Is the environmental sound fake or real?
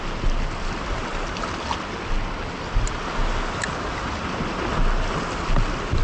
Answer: real